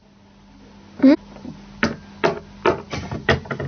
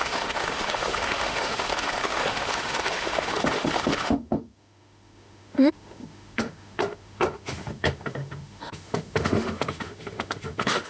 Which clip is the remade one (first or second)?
second